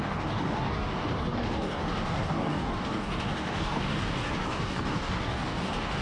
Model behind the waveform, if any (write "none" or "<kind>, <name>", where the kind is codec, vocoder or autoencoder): codec, DAC